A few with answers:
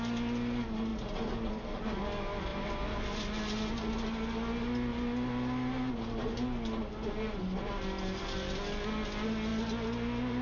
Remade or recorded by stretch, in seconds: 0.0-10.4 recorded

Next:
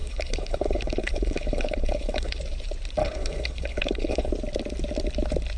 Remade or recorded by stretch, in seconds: 0.0-2.4 remade; 2.4-3.0 recorded; 3.0-4.3 remade; 4.3-5.6 recorded